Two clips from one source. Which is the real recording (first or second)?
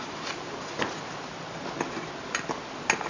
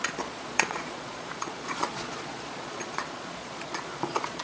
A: first